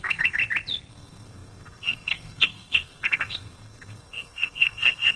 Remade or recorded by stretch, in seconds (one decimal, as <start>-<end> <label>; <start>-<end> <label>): 0.0-0.4 remade; 0.4-0.9 recorded; 0.9-5.2 remade